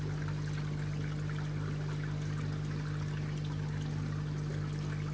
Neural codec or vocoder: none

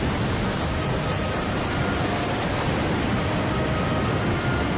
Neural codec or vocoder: none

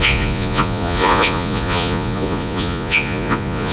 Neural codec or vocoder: vocoder, Vocos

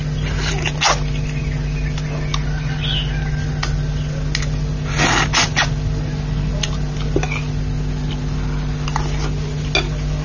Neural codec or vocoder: none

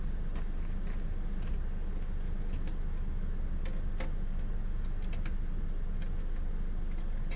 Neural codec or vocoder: none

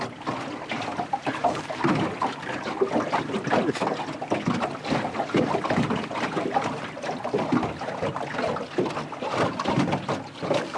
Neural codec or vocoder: none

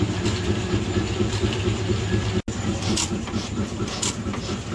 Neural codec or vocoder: none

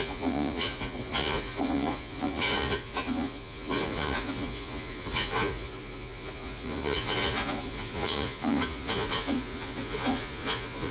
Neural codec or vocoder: vocoder, Vocos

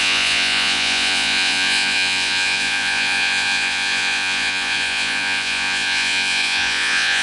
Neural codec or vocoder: vocoder, Vocos